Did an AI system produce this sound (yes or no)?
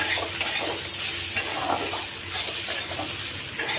no